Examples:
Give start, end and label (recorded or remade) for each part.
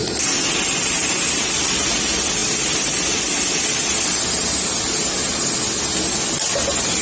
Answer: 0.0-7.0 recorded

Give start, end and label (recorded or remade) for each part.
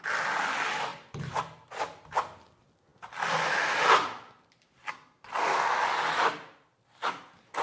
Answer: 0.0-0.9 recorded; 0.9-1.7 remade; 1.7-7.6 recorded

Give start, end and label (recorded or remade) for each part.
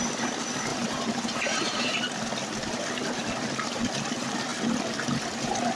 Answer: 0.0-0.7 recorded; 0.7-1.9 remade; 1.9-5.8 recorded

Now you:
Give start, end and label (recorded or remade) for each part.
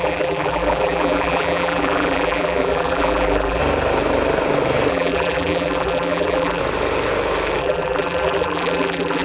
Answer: 0.0-3.6 remade; 3.6-4.9 recorded; 4.9-6.6 remade; 6.6-7.6 recorded; 7.6-9.2 remade